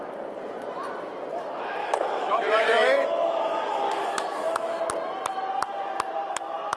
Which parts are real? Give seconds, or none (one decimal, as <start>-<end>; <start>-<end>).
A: 0.0-1.8; 4.8-6.8